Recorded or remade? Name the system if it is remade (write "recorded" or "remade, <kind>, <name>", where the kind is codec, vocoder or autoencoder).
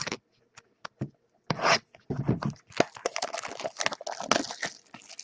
recorded